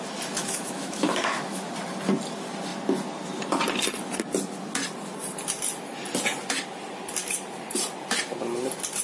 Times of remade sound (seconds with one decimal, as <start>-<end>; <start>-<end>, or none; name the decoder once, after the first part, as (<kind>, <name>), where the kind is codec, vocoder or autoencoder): 0.4-1.7 (autoencoder, DAC-VAE)